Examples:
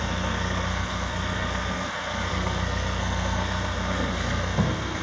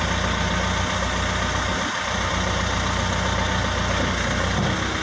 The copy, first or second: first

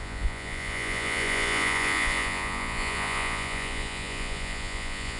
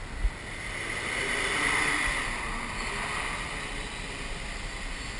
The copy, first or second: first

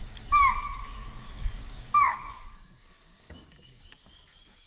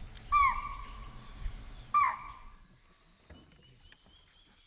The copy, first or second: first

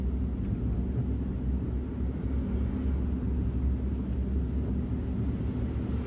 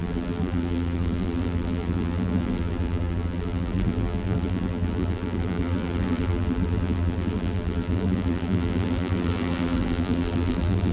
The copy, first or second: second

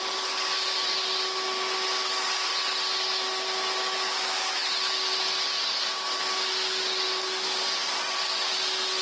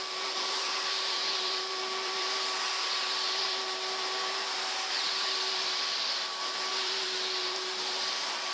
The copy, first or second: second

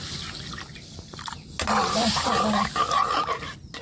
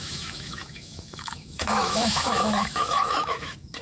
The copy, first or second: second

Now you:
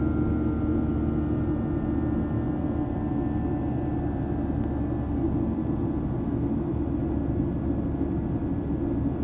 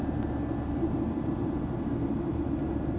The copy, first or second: second